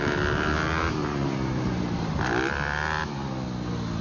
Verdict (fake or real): real